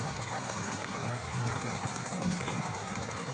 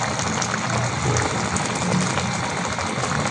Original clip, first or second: second